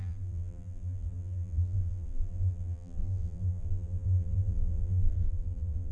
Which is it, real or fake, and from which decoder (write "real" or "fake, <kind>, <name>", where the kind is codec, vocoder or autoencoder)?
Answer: fake, vocoder, BigVGAN v2